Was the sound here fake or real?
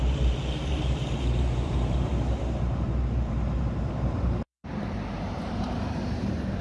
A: fake